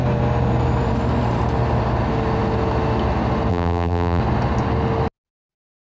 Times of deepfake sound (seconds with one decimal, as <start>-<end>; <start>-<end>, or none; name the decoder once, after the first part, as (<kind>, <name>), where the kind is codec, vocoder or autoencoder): 3.5-4.2 (vocoder, BigVGAN v2)